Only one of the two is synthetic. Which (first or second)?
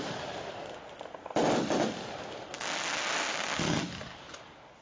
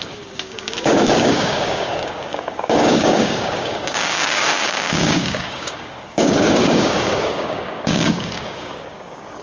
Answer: second